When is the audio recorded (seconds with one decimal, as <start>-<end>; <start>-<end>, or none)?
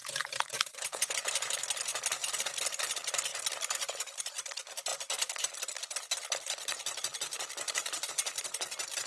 1.1-1.9; 2.6-3.3; 4.2-9.1